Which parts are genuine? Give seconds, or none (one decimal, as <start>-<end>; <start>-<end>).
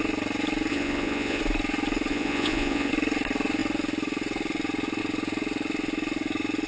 0.0-0.7; 1.4-2.1; 2.9-6.7